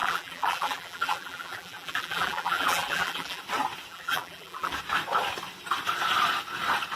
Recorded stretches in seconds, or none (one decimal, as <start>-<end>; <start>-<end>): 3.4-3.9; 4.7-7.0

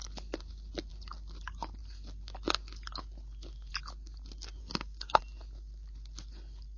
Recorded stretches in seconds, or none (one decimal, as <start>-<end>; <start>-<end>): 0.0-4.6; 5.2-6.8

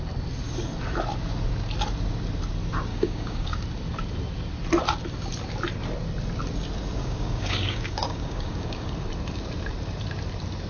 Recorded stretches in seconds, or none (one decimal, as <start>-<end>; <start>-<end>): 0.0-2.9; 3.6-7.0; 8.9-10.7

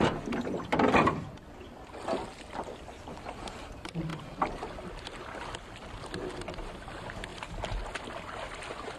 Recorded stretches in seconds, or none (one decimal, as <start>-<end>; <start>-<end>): 0.0-9.0

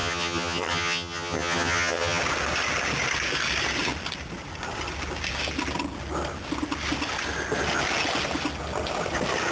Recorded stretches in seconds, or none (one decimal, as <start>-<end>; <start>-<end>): 2.2-9.5